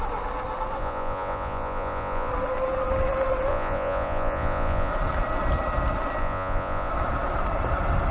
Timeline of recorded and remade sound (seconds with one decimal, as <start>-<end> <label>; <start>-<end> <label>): 0.0-0.8 recorded; 0.8-2.3 remade; 2.3-3.5 recorded; 3.5-4.9 remade; 4.9-6.2 recorded; 6.2-6.9 remade; 6.9-8.1 recorded